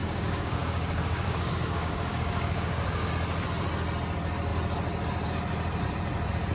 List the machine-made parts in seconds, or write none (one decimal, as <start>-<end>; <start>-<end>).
0.0-3.1